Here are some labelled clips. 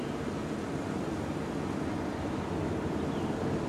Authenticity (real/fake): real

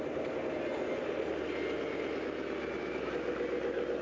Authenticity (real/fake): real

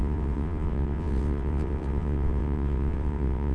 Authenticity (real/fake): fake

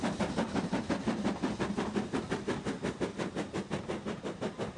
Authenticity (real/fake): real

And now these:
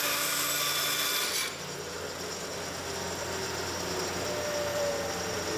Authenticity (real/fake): real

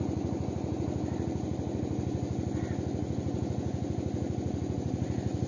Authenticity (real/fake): real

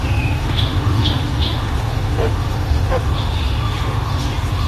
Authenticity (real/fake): fake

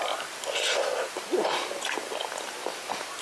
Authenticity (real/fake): real